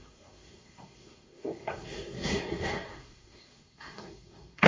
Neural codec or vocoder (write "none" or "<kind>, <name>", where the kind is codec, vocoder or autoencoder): codec, SNAC